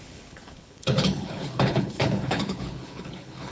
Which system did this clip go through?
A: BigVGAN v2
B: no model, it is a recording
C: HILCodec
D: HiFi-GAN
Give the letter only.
C